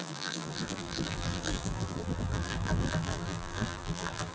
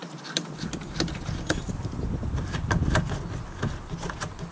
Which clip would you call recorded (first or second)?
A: second